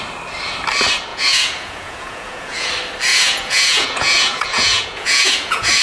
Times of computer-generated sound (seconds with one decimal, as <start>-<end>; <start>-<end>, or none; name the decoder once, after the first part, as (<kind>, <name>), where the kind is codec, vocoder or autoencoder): 1.1-2.7 (vocoder, Vocos); 3.1-5.8